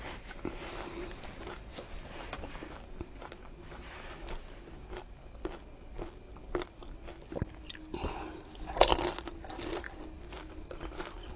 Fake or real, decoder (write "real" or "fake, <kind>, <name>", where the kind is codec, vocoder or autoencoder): real